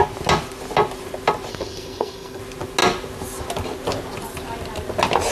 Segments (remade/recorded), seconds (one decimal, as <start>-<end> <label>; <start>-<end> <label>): 0.0-1.5 recorded; 1.5-2.4 remade; 2.4-5.3 recorded